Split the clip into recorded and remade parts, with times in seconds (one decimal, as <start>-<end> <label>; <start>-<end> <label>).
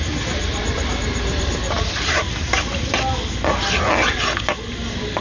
0.0-0.5 recorded; 0.5-3.6 remade; 3.6-5.2 recorded